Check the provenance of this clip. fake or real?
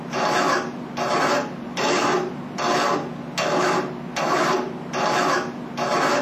real